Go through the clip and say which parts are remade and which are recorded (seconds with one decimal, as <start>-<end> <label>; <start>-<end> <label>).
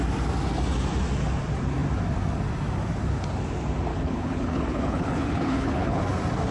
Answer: 0.0-3.9 recorded; 3.9-6.0 remade; 6.0-6.5 recorded